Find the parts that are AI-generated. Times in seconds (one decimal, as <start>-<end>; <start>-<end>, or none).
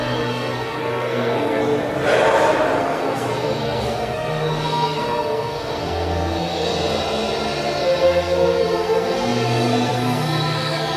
0.0-1.6; 2.8-6.7; 7.8-11.0